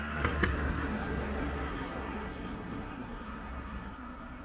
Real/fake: fake